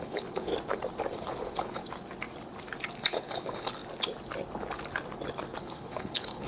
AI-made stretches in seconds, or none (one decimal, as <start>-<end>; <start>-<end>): 0.0-0.5; 1.1-1.8; 3.1-3.8; 5.6-6.5